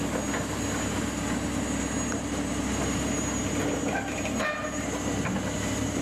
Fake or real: real